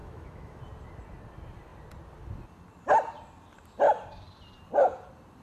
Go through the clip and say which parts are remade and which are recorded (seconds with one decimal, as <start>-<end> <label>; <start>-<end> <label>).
0.0-0.6 remade; 0.6-5.4 recorded